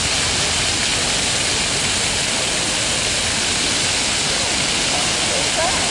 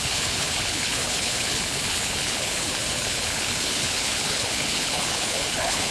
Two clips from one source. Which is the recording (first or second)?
first